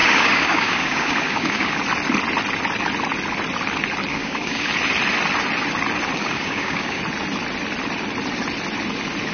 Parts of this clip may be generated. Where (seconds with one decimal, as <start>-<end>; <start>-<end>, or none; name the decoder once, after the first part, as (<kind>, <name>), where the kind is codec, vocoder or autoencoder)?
0.0-1.8 (codec, DAC); 4.1-4.7; 6.2-7.0